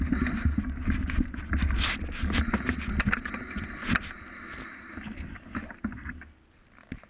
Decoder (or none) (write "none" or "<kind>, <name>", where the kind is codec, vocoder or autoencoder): none